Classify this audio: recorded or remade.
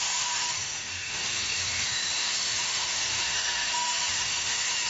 remade